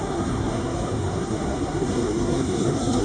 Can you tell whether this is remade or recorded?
remade